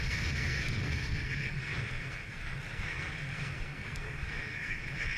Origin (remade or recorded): remade